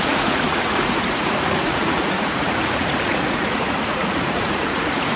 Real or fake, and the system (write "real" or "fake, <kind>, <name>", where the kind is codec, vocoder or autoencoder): fake, vocoder, Vocos